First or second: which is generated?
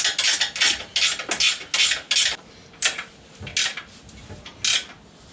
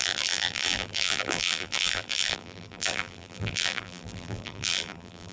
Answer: second